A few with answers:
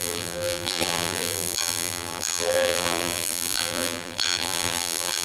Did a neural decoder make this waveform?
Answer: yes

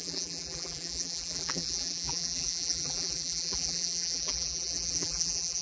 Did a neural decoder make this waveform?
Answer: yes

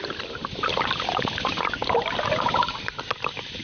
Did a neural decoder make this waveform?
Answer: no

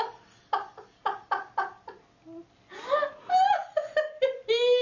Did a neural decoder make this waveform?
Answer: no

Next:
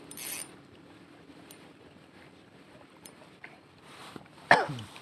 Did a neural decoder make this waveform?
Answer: yes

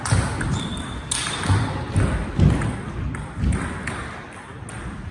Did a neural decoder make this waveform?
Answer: no